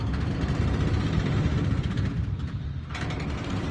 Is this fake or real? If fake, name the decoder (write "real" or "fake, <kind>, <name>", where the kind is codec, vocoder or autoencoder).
real